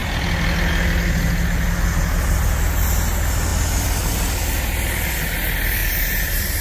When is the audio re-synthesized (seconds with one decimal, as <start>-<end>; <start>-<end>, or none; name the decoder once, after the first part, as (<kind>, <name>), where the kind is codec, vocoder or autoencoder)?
5.8-6.6 (vocoder, BigVGAN v2)